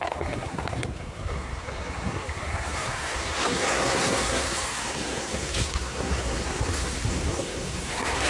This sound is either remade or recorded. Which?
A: remade